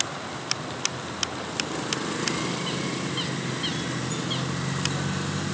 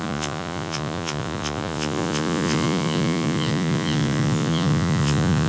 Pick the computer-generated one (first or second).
second